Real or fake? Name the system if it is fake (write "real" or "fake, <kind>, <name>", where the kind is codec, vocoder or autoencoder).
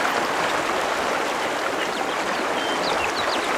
real